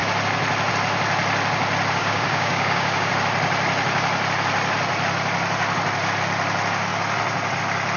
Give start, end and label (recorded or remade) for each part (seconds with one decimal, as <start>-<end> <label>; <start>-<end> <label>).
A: 0.0-2.0 recorded; 2.0-3.1 remade; 3.1-8.0 recorded